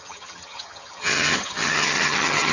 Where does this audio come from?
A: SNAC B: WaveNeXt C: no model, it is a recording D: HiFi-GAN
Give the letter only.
D